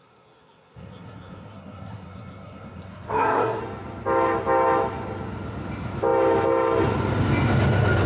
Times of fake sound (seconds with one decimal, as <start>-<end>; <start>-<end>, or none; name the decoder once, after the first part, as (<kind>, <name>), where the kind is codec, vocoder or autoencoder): 0.0-3.6 (codec, SNAC)